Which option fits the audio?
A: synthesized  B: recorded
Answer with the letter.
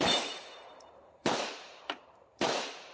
A